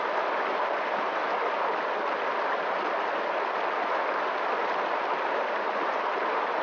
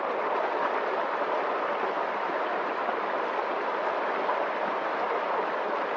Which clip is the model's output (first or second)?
second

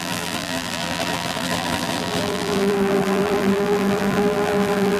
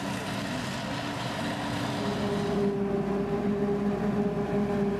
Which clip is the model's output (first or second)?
first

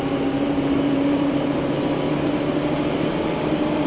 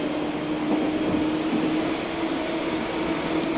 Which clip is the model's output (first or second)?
first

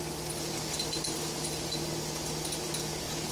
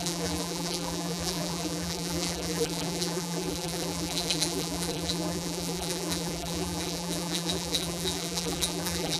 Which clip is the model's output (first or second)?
second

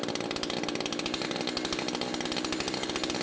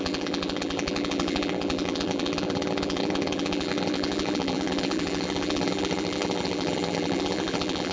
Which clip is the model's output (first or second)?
second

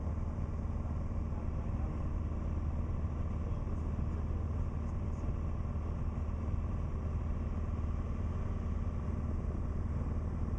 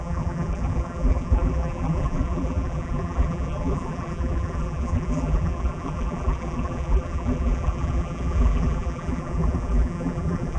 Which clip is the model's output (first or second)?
second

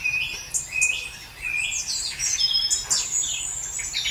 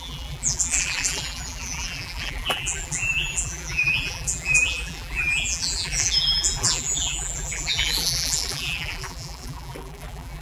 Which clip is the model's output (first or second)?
second